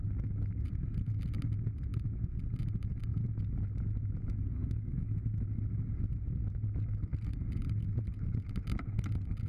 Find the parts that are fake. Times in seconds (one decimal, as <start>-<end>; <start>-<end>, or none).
4.6-5.5